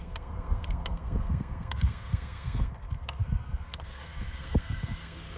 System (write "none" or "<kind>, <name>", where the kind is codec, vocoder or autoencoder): codec, SNAC